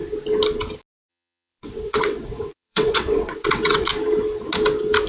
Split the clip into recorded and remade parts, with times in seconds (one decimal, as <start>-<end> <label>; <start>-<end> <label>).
0.0-1.1 recorded; 1.1-3.9 remade; 3.9-5.1 recorded